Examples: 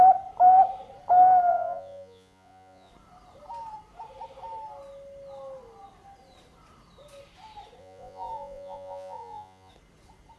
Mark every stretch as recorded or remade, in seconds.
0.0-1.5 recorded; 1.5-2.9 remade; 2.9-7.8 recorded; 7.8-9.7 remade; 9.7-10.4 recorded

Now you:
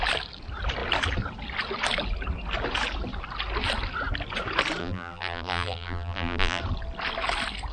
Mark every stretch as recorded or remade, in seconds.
0.0-4.8 recorded; 4.8-6.6 remade; 6.6-7.7 recorded

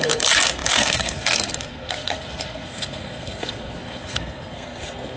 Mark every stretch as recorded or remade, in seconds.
0.0-5.2 remade